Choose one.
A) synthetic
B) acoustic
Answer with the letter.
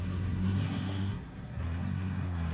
A